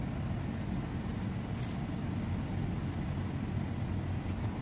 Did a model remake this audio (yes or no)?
no